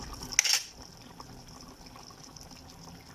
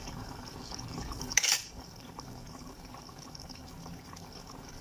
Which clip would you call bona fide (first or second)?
first